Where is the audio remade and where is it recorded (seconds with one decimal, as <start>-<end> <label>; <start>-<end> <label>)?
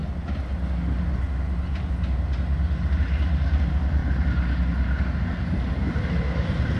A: 0.0-6.8 recorded